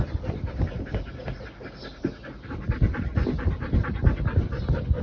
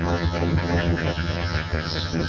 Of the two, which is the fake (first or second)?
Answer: second